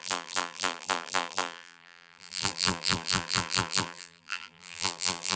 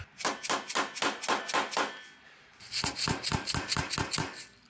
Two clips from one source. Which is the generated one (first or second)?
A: first